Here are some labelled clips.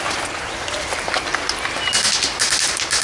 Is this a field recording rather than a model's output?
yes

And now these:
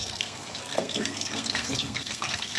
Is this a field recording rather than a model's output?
no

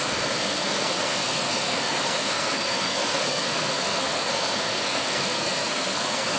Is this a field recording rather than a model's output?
no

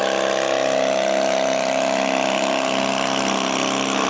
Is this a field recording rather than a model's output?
yes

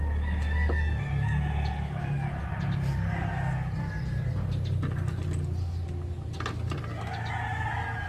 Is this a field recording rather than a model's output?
yes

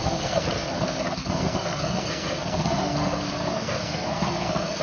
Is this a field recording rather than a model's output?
no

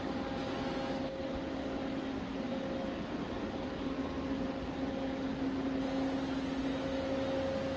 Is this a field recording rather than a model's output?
yes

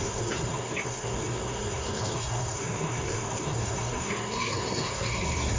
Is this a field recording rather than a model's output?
no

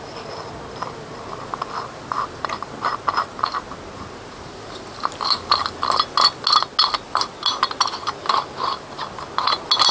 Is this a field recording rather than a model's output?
yes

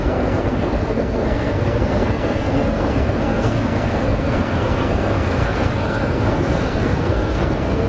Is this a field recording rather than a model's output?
no